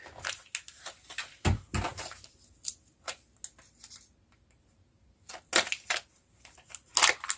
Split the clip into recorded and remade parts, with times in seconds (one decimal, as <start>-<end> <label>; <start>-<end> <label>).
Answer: 0.0-7.4 recorded